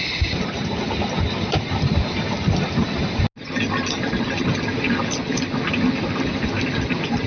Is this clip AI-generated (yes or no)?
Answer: no